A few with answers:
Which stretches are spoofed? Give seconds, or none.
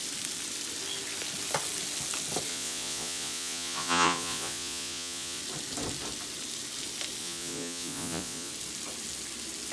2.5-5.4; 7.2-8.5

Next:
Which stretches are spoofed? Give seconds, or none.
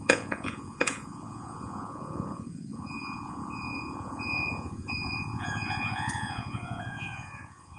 0.0-7.8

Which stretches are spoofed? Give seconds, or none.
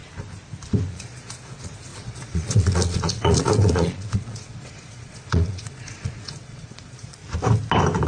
0.9-7.2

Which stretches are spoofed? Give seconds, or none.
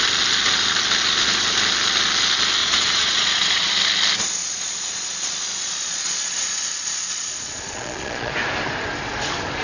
2.6-3.7; 4.4-8.3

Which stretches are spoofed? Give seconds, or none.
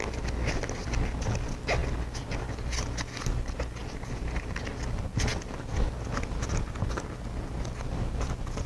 none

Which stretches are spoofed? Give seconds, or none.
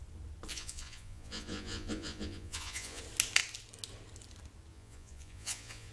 0.5-3.0; 4.7-5.9